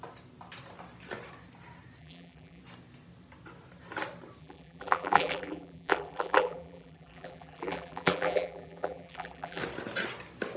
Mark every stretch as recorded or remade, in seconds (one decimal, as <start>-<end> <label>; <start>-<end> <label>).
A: 0.0-2.0 recorded; 2.0-2.6 remade; 2.6-4.4 recorded; 4.4-9.6 remade; 9.6-10.6 recorded